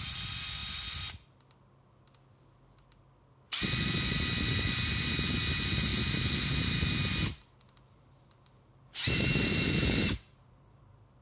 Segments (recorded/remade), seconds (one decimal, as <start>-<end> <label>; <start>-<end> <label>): 0.0-7.3 recorded; 7.3-11.2 remade